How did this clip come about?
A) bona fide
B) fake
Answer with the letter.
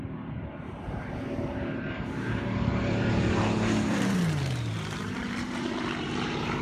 B